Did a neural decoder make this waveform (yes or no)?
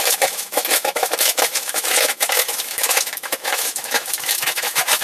yes